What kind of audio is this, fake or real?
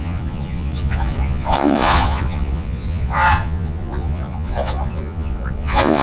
fake